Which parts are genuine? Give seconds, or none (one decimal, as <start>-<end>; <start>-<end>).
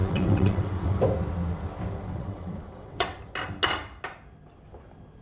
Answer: 1.0-2.1; 3.2-5.2